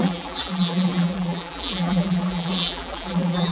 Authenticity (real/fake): fake